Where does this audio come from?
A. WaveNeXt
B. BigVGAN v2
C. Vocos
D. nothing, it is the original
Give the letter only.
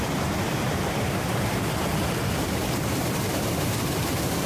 B